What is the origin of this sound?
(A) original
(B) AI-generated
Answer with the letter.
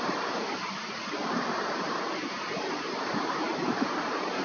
B